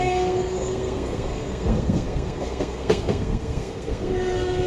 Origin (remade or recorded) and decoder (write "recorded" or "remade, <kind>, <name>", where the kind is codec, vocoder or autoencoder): remade, codec, SNAC